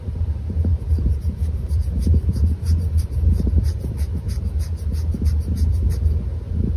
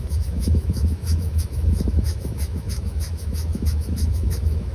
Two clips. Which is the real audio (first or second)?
first